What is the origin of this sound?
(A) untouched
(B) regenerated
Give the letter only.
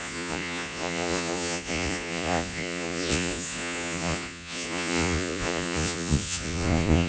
B